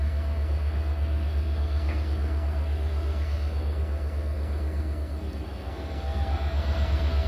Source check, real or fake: fake